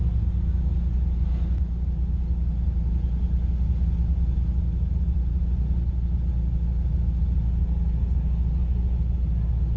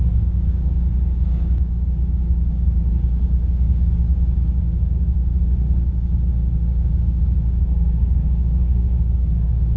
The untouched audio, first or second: first